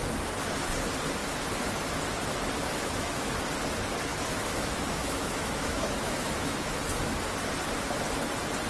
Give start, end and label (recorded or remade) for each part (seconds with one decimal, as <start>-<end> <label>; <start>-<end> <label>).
0.0-2.8 recorded; 2.8-3.3 remade; 3.3-4.1 recorded; 4.1-6.8 remade; 6.8-8.7 recorded